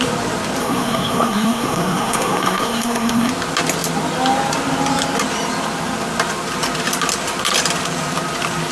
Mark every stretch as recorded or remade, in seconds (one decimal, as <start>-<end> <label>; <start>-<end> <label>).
0.0-0.6 recorded; 0.6-3.3 remade; 3.3-8.7 recorded